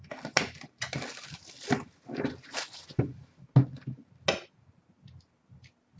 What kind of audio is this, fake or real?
real